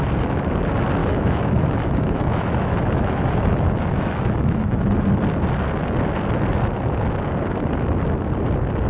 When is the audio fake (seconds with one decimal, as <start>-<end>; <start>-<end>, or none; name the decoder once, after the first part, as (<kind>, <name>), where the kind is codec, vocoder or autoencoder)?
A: 1.0-5.0 (autoencoder, DAC-VAE)